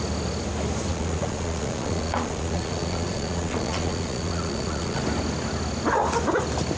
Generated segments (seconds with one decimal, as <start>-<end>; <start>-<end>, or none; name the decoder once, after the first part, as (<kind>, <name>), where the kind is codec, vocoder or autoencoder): 0.9-5.0 (vocoder, Vocos)

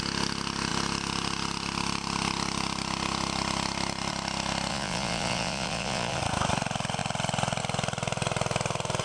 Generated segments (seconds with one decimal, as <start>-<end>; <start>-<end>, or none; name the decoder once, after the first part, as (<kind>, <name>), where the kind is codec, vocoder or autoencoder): 4.7-6.2 (vocoder, Vocos)

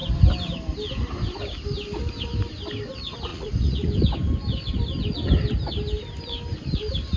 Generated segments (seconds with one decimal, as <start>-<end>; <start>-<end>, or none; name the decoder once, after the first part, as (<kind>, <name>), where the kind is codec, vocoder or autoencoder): 3.3-3.9 (vocoder, Vocos)

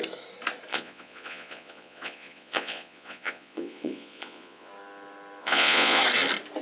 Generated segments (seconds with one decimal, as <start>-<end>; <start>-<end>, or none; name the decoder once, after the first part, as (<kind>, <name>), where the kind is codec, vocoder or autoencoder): 0.7-4.7 (vocoder, Vocos); 5.4-6.0

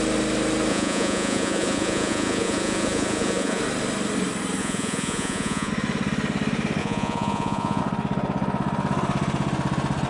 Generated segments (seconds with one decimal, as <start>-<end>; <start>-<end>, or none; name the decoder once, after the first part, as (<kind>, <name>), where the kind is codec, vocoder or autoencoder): 0.7-3.6 (vocoder, Vocos); 4.6-5.7; 6.8-7.8

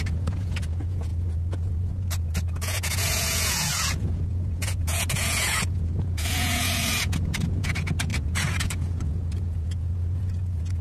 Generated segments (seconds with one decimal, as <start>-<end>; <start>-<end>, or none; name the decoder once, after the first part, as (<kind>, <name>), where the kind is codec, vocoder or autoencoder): 0.0-10.8 (vocoder, Vocos)

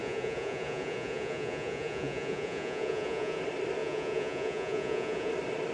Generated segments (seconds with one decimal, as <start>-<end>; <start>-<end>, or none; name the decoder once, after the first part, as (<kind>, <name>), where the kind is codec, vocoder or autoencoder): 0.0-3.4 (vocoder, Vocos); 3.8-5.3

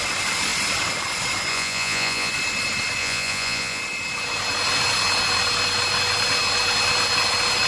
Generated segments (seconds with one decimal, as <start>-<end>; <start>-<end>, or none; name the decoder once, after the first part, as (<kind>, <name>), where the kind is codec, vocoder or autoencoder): 1.5-2.3 (vocoder, Vocos); 3.0-3.8